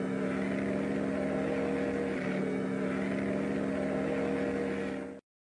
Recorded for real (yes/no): yes